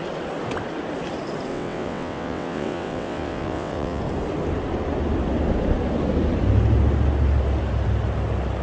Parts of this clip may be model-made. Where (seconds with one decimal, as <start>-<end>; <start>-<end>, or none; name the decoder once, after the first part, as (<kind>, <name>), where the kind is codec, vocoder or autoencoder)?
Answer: 1.5-4.0 (vocoder, WaveNeXt)